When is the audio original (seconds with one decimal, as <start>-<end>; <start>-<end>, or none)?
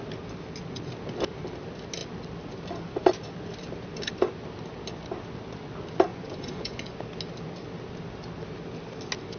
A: 0.0-6.1; 7.0-9.4